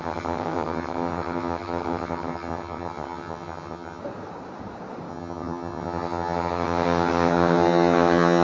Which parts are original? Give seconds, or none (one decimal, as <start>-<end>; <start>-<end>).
4.0-5.1